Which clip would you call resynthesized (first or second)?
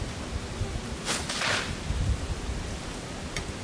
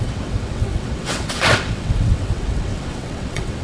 second